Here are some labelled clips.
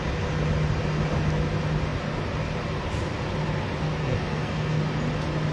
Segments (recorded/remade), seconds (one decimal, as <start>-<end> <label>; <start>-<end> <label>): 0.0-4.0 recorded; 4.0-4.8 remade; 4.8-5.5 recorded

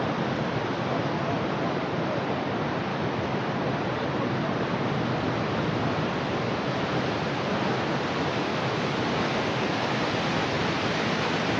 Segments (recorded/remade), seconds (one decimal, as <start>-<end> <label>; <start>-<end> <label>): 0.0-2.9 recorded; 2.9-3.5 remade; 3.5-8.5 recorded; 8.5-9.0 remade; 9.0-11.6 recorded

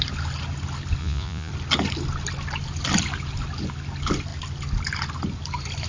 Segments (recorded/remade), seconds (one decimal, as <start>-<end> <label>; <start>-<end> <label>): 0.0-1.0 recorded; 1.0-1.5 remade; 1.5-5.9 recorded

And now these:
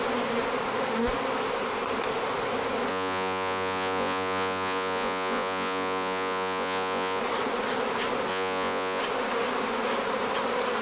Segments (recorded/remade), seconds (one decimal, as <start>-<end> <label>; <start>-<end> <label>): 0.0-2.9 recorded; 2.9-7.2 remade; 7.2-8.3 recorded; 8.3-9.0 remade; 9.0-10.8 recorded

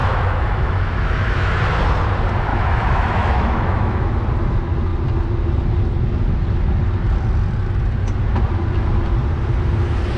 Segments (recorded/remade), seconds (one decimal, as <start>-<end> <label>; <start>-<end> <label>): 0.0-1.6 remade; 1.6-2.5 recorded; 2.5-4.1 remade; 4.1-10.2 recorded

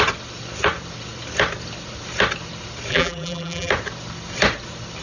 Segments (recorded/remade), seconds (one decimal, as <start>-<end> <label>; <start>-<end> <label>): 0.0-2.9 recorded; 2.9-3.7 remade; 3.7-5.0 recorded

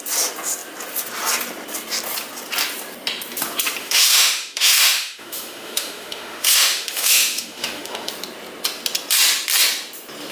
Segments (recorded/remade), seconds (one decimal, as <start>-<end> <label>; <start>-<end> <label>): 0.0-3.8 recorded; 3.8-8.1 remade; 8.1-10.3 recorded

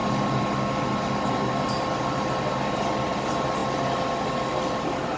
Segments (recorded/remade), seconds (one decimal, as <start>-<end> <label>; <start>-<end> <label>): 0.0-5.2 recorded